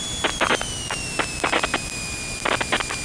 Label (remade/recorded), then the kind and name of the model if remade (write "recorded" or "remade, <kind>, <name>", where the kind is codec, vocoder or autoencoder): recorded